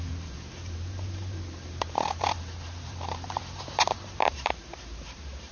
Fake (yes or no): yes